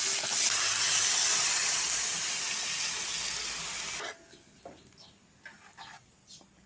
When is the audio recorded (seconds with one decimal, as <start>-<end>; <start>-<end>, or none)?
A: 0.0-6.7